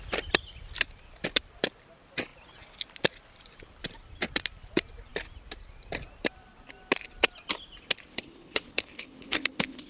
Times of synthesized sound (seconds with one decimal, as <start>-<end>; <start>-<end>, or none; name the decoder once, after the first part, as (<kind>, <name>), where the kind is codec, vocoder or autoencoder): 8.1-9.9 (codec, HILCodec)